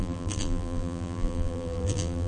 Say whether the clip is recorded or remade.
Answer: remade